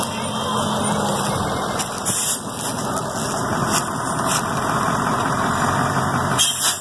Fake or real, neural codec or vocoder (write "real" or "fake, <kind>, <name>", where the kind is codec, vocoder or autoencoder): real